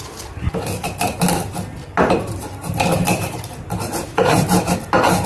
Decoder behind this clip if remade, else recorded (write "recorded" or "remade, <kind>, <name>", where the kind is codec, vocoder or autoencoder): recorded